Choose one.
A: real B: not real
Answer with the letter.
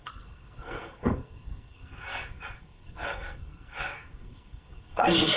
B